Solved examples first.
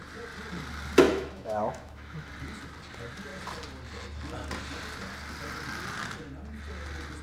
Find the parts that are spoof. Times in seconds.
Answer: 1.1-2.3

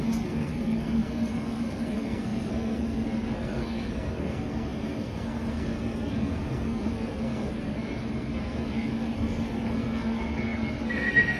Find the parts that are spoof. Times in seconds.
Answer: 0.0-11.4

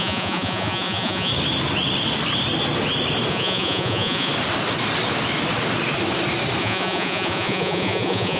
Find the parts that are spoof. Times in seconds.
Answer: 0.0-1.3; 3.3-4.3; 6.6-8.4

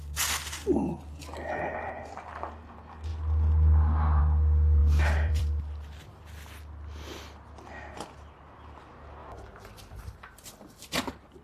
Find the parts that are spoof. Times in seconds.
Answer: 4.8-6.0; 9.2-10.0